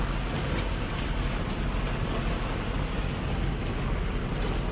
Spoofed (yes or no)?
no